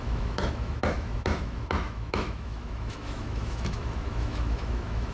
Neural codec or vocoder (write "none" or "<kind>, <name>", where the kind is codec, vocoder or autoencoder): autoencoder, DAC-VAE